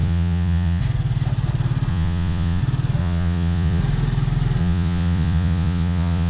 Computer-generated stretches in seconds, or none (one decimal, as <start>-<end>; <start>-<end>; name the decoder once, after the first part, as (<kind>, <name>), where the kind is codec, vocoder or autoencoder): 0.0-0.8 (vocoder, Vocos); 1.9-2.6; 3.0-3.8; 4.6-6.3